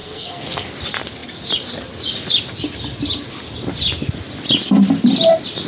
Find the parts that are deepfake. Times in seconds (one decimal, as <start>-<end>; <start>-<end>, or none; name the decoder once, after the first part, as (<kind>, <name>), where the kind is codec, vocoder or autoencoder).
0.0-0.7 (codec, SNAC)